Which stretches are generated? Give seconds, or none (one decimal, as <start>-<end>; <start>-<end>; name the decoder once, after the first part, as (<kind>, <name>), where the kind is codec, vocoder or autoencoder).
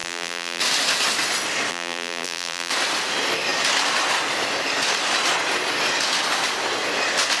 0.0-0.6 (vocoder, BigVGAN v2); 1.7-2.7